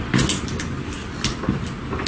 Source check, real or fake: real